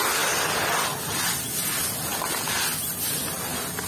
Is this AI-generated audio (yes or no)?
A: no